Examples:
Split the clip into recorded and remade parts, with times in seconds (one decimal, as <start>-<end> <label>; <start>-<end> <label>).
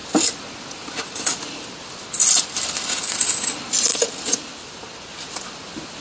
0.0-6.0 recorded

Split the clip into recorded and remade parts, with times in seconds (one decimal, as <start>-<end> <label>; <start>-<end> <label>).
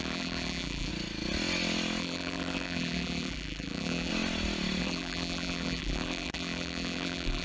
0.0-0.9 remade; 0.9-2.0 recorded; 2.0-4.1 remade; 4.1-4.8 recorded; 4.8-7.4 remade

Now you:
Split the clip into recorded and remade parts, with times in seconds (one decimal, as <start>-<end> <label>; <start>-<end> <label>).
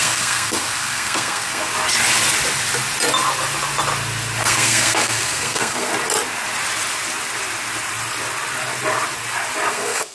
0.0-1.7 remade; 1.7-4.4 recorded; 4.4-5.9 remade; 5.9-9.7 recorded; 9.7-10.1 remade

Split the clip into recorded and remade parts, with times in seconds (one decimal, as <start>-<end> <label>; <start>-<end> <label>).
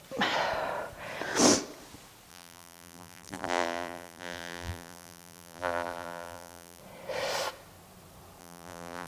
0.0-2.3 recorded; 2.3-6.8 remade; 6.8-8.4 recorded; 8.4-9.1 remade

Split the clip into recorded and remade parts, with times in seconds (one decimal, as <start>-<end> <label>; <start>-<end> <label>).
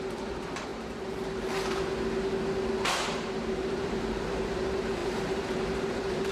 0.0-0.7 remade; 0.7-2.7 recorded; 2.7-6.3 remade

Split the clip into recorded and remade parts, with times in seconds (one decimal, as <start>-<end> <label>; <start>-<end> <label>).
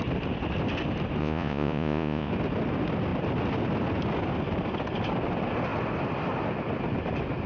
0.0-1.2 recorded; 1.2-2.3 remade; 2.3-7.5 recorded